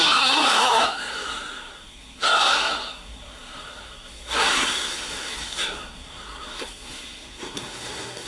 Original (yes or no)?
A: no